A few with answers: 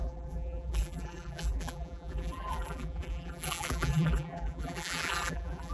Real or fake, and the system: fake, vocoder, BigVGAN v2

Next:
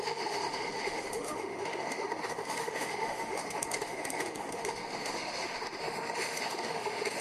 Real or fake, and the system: fake, autoencoder, DAC-VAE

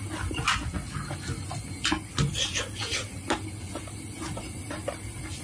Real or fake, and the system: real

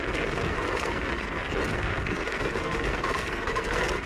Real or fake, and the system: fake, codec, SNAC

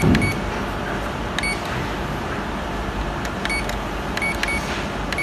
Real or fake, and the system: real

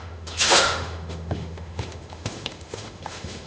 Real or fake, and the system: fake, autoencoder, DAC-VAE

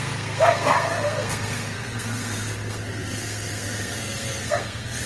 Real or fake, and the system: fake, codec, SNAC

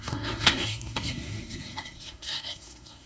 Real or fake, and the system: fake, codec, SNAC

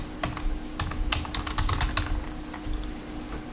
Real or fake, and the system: real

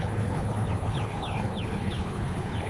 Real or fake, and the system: fake, codec, HILCodec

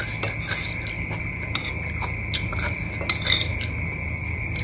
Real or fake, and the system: real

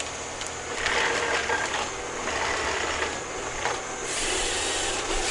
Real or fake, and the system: real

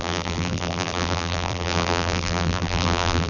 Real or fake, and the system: fake, vocoder, BigVGAN v2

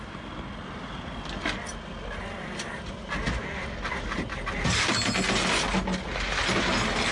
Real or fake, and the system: real